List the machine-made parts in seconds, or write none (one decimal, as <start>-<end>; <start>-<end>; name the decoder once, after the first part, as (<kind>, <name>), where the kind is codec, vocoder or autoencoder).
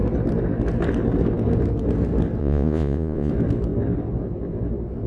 2.4-3.3 (vocoder, Vocos)